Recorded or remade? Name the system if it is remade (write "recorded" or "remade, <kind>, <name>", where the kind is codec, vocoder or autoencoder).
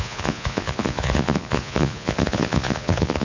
remade, vocoder, Vocos